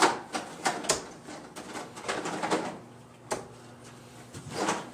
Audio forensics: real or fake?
real